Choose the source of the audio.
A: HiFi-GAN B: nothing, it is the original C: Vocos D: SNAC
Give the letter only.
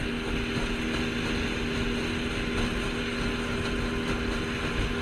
B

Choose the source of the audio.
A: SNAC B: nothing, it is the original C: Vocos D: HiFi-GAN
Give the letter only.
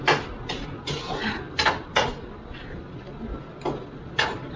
B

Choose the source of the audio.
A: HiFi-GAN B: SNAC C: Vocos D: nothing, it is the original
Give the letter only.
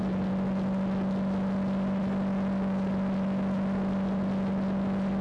D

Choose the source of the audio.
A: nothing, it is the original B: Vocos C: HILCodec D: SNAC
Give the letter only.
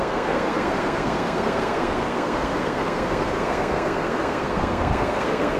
D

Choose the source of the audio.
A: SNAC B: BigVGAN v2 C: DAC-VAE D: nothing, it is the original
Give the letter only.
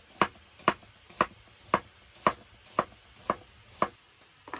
D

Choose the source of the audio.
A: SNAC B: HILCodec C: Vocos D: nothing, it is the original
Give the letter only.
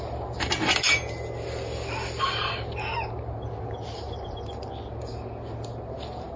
D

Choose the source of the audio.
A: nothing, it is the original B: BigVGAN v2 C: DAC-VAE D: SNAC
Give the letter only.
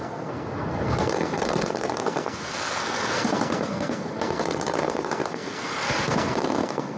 D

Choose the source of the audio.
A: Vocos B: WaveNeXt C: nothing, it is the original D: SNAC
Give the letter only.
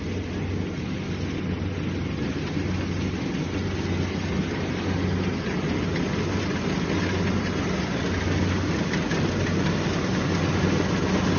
C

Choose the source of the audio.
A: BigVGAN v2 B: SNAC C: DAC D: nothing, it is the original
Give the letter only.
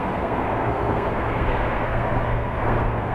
B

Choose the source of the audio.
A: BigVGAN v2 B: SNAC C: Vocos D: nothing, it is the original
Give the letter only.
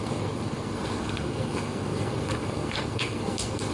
B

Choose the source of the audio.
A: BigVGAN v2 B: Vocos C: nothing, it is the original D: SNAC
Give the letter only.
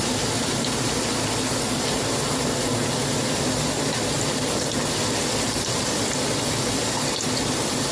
C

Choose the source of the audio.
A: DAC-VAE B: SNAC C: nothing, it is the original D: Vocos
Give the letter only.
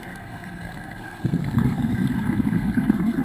B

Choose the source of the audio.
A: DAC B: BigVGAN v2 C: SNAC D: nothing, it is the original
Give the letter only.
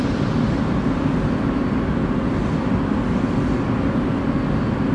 D